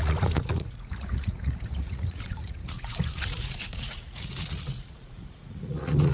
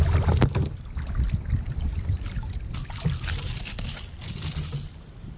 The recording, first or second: second